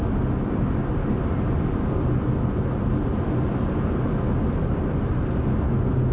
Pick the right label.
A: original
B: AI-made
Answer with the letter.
A